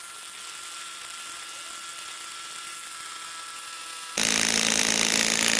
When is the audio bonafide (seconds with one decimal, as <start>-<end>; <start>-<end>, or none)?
0.0-5.6